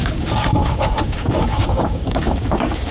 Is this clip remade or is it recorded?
remade